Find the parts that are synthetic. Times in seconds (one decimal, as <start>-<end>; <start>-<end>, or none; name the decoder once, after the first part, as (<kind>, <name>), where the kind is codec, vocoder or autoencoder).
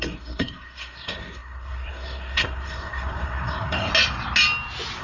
0.0-3.9 (codec, SNAC)